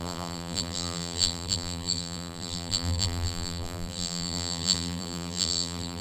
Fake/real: fake